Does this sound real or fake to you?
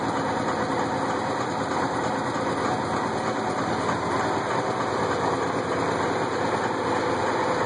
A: real